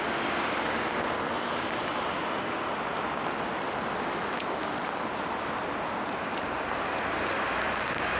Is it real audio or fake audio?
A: real